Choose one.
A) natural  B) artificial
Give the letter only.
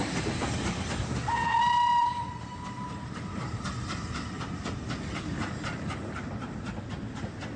A